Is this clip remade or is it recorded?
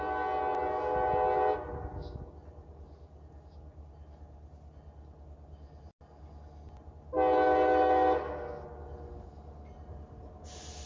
recorded